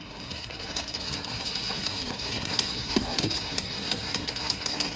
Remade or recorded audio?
remade